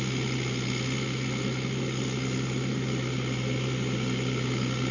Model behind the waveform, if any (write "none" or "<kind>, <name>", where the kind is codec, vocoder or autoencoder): none